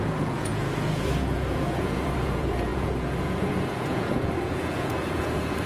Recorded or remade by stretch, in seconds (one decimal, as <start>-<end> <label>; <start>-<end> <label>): 0.0-5.7 remade